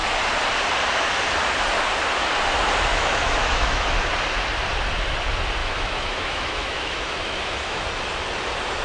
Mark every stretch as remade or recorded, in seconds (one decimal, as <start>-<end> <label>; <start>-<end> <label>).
0.0-2.9 recorded; 2.9-4.1 remade; 4.1-5.6 recorded; 5.6-7.8 remade; 7.8-8.8 recorded